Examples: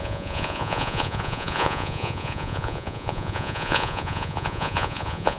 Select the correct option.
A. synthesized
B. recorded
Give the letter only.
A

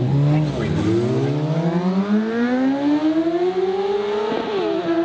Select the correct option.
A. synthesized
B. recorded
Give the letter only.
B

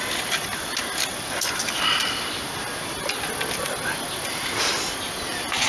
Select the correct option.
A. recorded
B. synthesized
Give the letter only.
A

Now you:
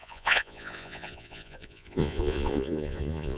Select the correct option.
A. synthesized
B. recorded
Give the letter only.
A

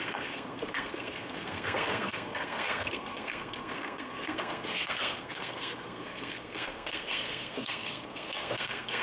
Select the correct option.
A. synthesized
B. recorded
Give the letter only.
A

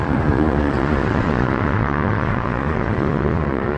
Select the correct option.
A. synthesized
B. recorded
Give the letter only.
A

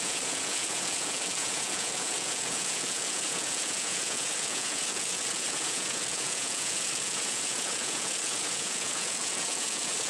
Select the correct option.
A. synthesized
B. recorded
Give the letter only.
A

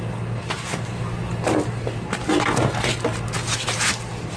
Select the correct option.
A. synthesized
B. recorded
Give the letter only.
B